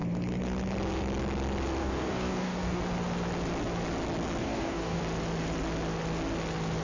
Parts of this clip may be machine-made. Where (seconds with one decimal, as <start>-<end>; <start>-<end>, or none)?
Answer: 1.8-2.8; 4.4-5.0